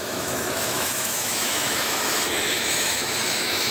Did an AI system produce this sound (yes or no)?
yes